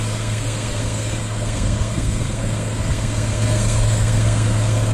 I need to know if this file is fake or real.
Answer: fake